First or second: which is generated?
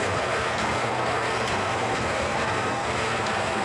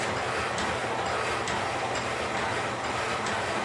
first